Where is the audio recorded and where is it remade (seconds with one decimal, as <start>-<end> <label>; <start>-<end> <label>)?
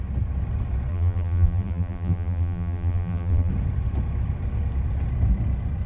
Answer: 0.0-0.9 recorded; 0.9-3.5 remade; 3.5-5.9 recorded